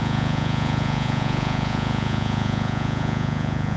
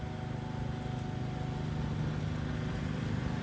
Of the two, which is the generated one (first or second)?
first